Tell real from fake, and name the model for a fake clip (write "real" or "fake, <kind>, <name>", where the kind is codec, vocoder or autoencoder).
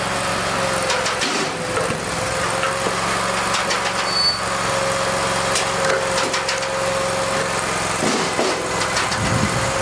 real